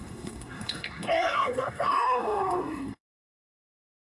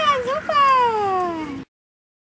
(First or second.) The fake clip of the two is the first